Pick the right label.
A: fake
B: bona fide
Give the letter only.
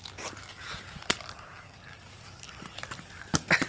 B